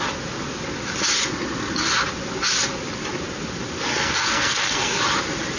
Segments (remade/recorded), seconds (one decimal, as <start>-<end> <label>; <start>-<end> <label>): 0.0-3.9 recorded; 3.9-5.0 remade; 5.0-5.6 recorded